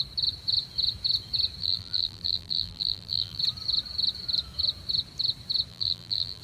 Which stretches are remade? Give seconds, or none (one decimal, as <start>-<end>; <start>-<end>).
1.6-3.4; 5.7-6.4